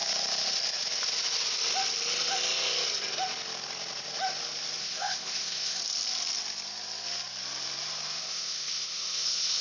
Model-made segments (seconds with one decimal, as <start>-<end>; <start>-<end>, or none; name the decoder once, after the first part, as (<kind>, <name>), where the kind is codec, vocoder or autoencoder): 4.8-5.8 (codec, ZipCodec); 8.2-9.6